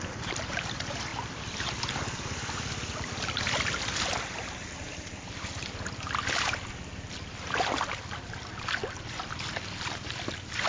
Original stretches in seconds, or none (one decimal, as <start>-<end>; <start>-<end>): none